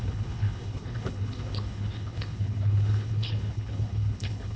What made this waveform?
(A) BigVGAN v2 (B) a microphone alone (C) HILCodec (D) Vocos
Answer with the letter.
C